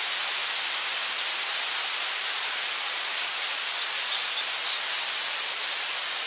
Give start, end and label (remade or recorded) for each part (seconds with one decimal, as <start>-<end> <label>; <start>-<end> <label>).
0.0-6.3 recorded